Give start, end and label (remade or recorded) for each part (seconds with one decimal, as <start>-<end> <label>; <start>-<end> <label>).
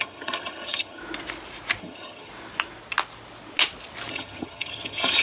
0.0-1.0 remade; 1.0-1.8 recorded; 1.8-2.3 remade; 2.3-4.1 recorded; 4.1-5.2 remade